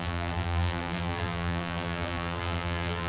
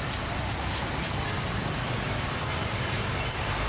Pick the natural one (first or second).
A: second